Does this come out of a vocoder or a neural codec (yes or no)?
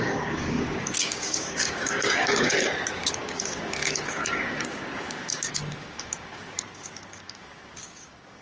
yes